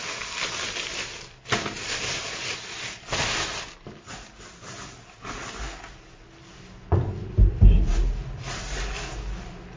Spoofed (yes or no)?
no